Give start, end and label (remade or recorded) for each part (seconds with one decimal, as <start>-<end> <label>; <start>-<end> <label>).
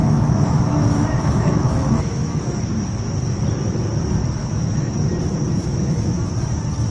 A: 0.0-2.6 remade; 2.6-4.4 recorded; 4.4-5.1 remade; 5.1-5.6 recorded; 5.6-6.3 remade; 6.3-6.9 recorded